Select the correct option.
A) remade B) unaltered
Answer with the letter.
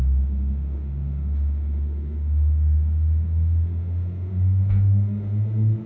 A